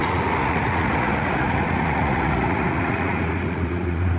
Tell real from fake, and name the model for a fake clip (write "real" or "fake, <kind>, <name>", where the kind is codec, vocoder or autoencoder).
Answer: fake, vocoder, Vocos